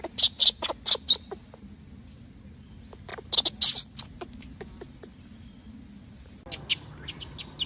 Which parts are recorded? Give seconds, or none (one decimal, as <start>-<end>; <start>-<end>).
0.0-7.7